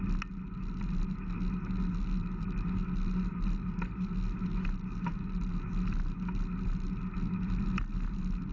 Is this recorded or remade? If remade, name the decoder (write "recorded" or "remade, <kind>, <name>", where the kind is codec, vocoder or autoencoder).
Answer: recorded